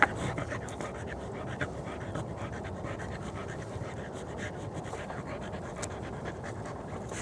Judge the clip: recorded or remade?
recorded